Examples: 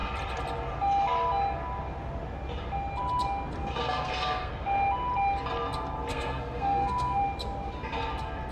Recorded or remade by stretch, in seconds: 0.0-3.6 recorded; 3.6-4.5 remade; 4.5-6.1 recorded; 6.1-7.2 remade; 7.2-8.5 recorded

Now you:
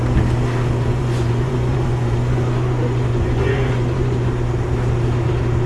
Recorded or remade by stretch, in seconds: 0.0-0.9 recorded; 0.9-4.3 remade; 4.3-5.7 recorded

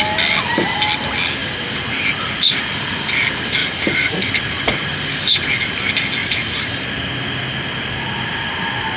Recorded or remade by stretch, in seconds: 0.0-3.6 recorded; 3.6-4.3 remade; 4.3-6.2 recorded; 6.2-6.7 remade; 6.7-9.0 recorded

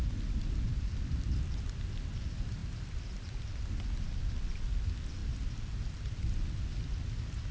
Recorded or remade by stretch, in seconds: 0.0-7.5 recorded

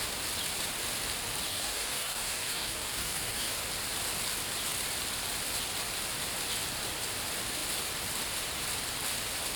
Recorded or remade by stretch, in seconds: 0.0-1.5 recorded; 1.5-3.6 remade; 3.6-9.6 recorded

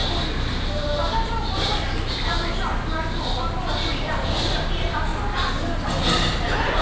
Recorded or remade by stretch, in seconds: 0.0-3.9 recorded; 3.9-5.1 remade; 5.1-6.2 recorded; 6.2-6.8 remade